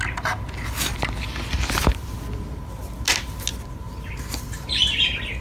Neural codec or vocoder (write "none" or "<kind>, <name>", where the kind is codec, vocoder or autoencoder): none